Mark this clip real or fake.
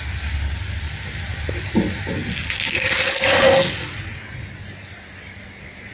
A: real